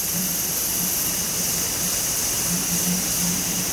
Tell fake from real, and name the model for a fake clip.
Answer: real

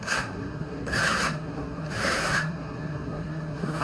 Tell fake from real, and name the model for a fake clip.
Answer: fake, codec, SNAC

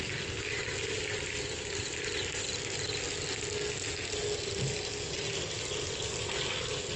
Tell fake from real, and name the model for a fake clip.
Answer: real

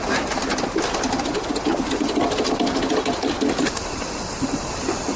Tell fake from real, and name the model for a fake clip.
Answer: real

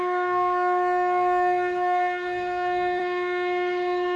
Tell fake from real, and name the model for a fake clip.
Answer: fake, autoencoder, DAC-VAE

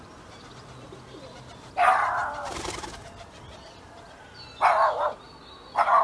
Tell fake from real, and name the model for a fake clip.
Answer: real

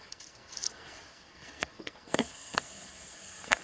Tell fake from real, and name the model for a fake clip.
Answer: fake, codec, SNAC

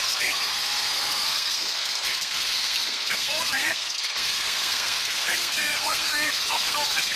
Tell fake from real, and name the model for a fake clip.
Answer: fake, codec, SNAC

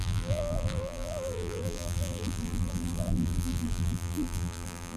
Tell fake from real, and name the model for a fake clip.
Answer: fake, vocoder, BigVGAN v2